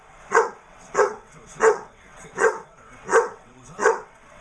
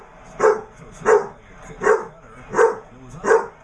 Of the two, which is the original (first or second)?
second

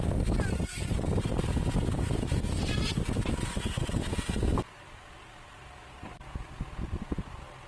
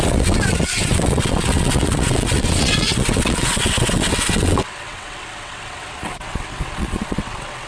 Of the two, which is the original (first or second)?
first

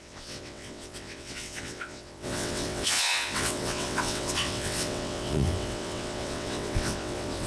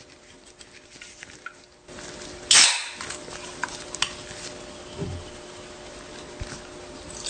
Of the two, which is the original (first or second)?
second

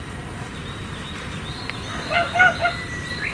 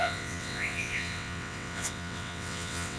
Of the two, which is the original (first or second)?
first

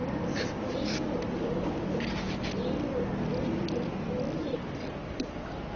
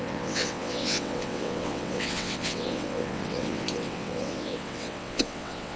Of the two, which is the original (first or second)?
first